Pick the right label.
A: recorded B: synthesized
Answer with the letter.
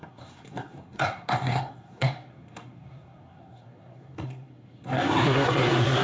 B